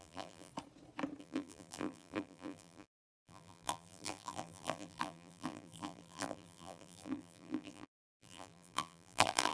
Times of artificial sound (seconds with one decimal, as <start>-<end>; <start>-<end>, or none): 0.0-0.5; 1.2-9.5